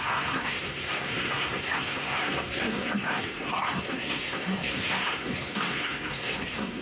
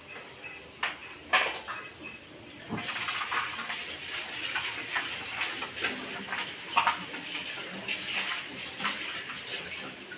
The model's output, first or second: first